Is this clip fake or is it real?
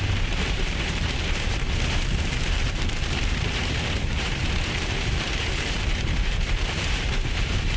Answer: fake